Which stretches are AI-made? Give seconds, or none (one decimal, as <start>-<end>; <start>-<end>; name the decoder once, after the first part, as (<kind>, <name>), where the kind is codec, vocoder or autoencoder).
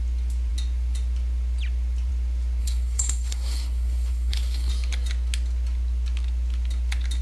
2.6-4.7 (codec, SNAC)